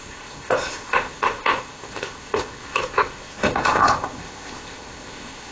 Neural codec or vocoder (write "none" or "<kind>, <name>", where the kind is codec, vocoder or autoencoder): codec, ZipCodec